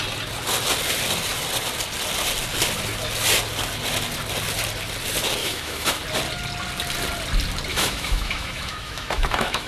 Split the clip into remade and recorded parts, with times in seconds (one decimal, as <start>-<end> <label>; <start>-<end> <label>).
0.0-5.4 recorded; 5.4-6.0 remade; 6.0-7.7 recorded; 7.7-9.7 remade